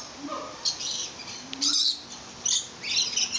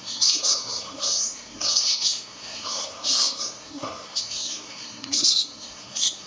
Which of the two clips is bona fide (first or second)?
first